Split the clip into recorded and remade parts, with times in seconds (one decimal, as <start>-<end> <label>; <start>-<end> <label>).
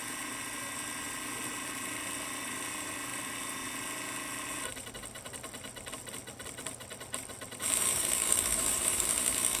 0.0-7.9 recorded; 7.9-9.6 remade